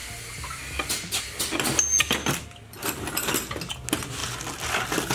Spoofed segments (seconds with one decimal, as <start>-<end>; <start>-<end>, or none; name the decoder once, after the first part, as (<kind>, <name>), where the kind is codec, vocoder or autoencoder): none